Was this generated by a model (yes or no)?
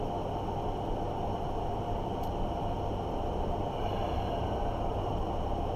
no